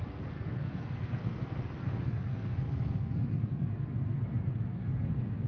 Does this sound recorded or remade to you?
remade